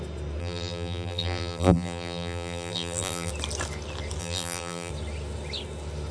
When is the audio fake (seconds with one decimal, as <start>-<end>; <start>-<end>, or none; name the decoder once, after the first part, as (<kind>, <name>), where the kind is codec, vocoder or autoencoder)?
0.4-3.3 (vocoder, BigVGAN v2); 4.2-4.9